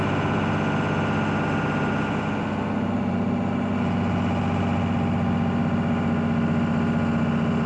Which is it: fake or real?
real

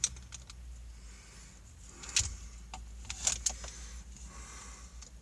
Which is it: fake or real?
real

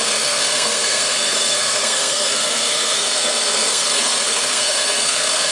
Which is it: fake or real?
fake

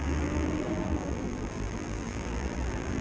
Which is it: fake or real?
fake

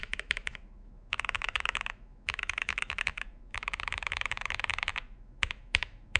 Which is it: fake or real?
fake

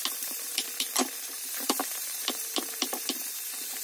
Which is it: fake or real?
fake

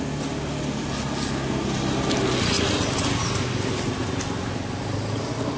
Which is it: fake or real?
real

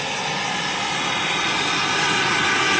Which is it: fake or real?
real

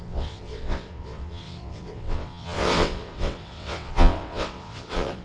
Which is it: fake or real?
fake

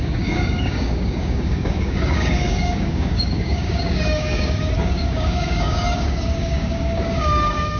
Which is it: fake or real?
fake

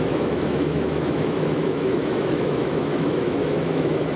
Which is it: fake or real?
fake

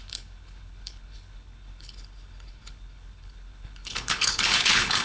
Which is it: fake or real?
fake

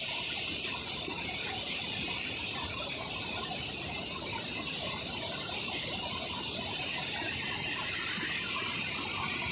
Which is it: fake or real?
fake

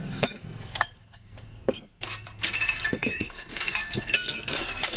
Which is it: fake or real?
fake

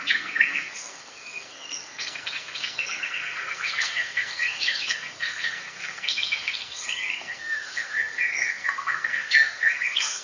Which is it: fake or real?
fake